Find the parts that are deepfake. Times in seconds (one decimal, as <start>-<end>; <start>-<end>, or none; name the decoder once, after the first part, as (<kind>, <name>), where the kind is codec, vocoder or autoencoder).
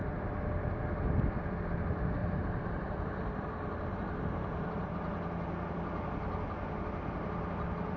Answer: 2.2-4.9 (vocoder, BigVGAN v2)